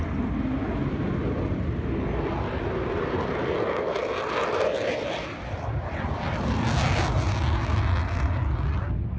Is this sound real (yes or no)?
yes